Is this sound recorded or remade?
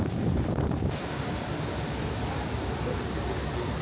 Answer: recorded